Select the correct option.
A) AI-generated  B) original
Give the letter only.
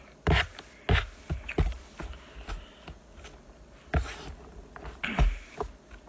B